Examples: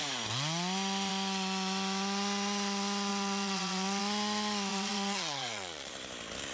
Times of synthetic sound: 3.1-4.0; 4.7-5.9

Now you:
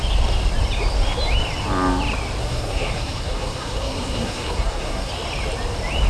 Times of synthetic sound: 2.4-5.1

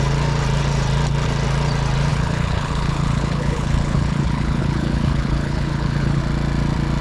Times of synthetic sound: 2.1-6.2

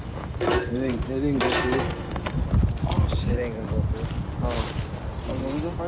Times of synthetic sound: 0.0-0.9; 1.9-2.4

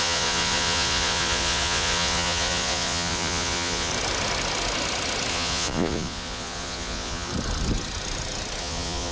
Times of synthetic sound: 0.0-3.9; 5.3-7.3; 8.6-9.1

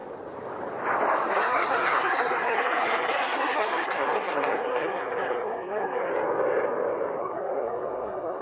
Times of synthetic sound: 1.3-6.1; 7.2-8.4